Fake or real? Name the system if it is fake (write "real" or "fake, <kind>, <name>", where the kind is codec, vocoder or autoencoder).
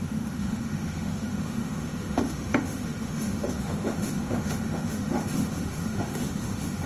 fake, autoencoder, DAC-VAE